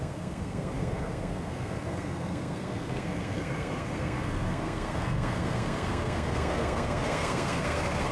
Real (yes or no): no